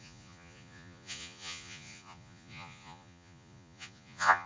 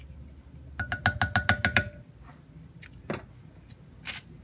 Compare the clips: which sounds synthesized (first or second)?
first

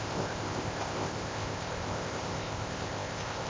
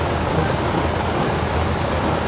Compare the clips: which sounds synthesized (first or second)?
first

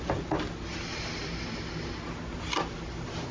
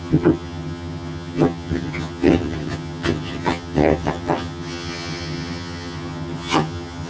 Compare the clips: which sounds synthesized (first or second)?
second